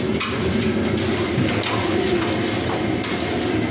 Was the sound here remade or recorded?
recorded